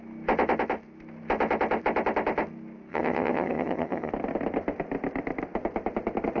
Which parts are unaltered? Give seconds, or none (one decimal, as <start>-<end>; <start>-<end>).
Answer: 0.0-2.9; 4.1-6.4